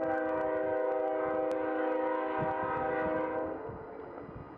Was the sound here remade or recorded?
recorded